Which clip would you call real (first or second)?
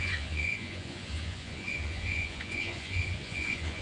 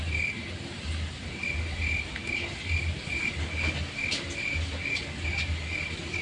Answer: second